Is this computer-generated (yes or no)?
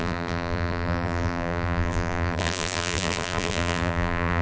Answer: yes